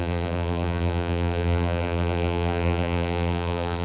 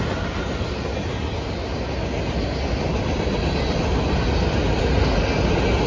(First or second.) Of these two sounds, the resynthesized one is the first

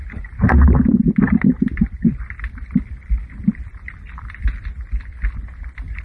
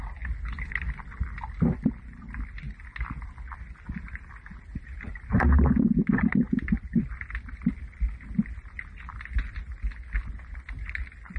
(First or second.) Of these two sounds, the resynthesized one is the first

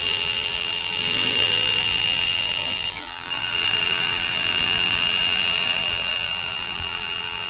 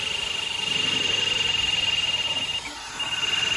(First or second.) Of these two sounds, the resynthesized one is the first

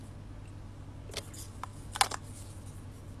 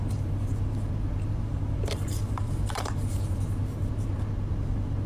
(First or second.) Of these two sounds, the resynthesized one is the second